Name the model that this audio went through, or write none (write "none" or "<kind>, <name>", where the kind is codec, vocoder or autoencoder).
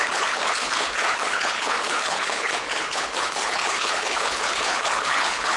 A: codec, HILCodec